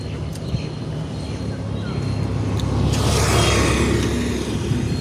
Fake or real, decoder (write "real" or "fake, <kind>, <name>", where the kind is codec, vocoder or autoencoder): real